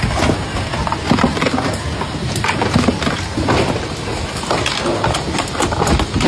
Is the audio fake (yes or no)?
no